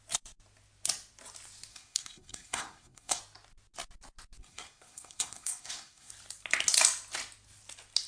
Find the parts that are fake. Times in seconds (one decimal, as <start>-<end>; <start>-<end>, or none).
1.7-3.2; 4.4-6.1